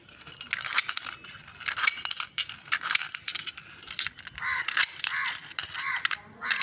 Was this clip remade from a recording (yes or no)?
no